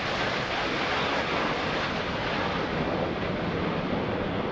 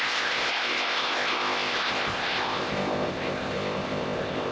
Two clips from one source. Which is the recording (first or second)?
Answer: first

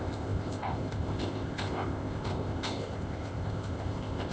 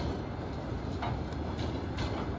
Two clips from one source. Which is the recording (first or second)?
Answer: second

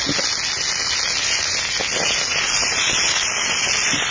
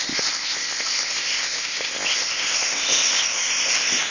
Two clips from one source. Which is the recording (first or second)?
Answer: first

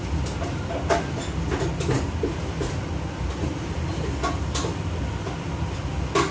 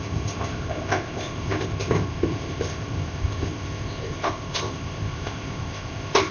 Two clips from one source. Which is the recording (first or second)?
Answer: first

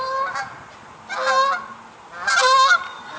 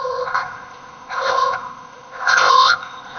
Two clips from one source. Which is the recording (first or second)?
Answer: first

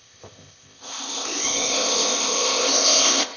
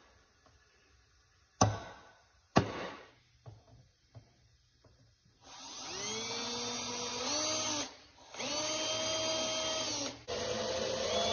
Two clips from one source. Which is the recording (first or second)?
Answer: second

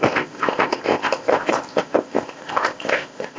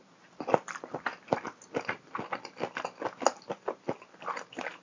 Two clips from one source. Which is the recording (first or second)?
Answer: second